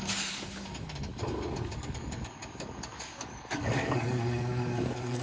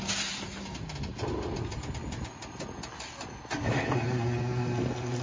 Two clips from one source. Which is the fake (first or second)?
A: first